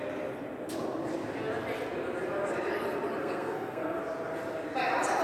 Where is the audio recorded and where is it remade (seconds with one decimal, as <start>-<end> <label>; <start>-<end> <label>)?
0.0-3.2 recorded; 3.2-4.0 remade; 4.0-5.2 recorded